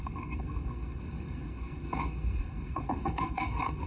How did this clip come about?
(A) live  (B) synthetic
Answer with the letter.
B